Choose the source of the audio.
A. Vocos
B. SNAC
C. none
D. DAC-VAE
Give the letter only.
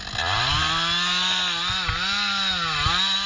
C